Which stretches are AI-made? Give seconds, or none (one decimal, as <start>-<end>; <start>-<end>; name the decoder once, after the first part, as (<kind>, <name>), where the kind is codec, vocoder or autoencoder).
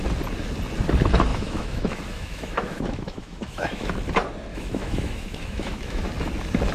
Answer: 1.3-3.9 (autoencoder, DAC-VAE); 4.5-6.1